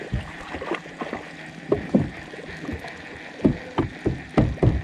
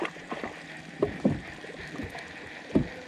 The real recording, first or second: first